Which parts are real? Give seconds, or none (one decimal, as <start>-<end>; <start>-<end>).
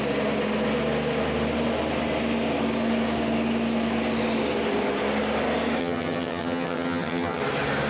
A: 0.0-5.8; 7.4-7.9